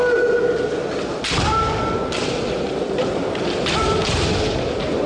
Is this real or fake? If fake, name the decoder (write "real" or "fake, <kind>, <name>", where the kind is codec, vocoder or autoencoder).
real